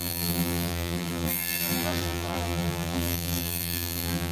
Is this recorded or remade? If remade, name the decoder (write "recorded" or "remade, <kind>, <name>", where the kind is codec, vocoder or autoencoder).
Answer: remade, vocoder, BigVGAN v2